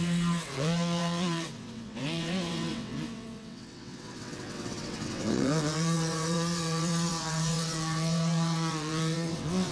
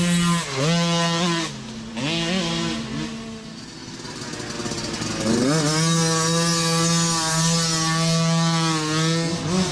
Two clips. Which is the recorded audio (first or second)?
second